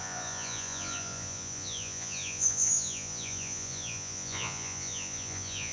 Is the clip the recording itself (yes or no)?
no